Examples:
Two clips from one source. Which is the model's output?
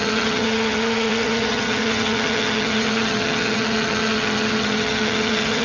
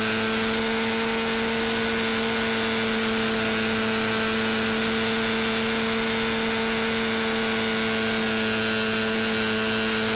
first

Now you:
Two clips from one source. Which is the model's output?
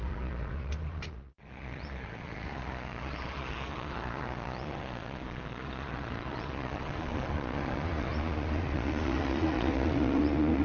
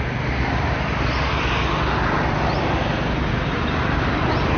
first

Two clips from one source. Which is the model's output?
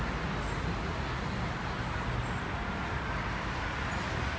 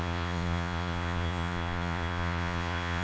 second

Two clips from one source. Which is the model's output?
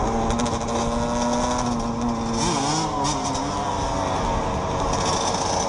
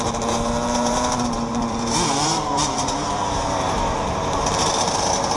second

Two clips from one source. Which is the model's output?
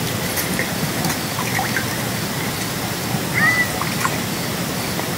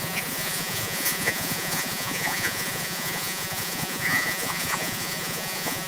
second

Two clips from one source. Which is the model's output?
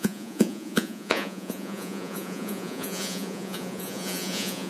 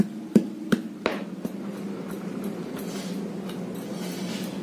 first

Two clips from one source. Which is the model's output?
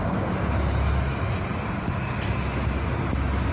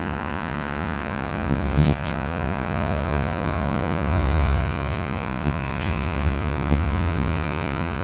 second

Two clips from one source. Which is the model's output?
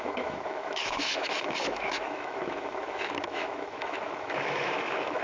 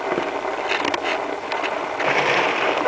first